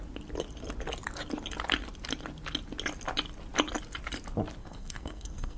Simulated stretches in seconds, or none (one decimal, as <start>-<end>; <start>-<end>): 4.6-5.6